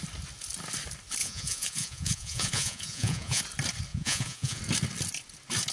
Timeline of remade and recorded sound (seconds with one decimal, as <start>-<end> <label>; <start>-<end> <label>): 0.0-1.2 recorded; 1.2-3.4 remade; 3.4-3.9 recorded; 3.9-4.6 remade; 4.6-5.7 recorded